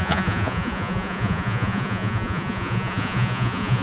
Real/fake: fake